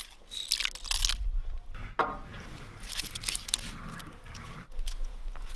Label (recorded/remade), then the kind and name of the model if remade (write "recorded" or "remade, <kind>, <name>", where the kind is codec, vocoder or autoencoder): recorded